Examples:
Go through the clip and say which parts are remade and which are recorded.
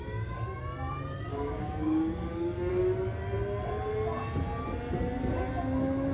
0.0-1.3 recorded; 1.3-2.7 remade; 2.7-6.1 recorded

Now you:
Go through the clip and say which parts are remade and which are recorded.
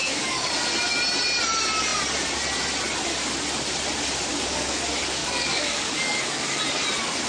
0.0-0.5 remade; 0.5-4.3 recorded; 4.3-4.8 remade; 4.8-5.2 recorded; 5.2-6.6 remade; 6.6-7.3 recorded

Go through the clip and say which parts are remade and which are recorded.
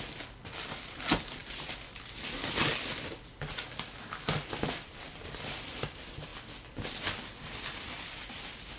0.0-8.8 recorded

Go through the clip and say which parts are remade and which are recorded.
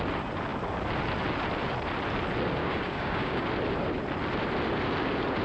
0.0-2.6 recorded; 2.6-3.4 remade; 3.4-5.4 recorded